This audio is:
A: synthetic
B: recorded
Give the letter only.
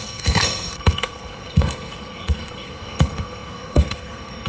A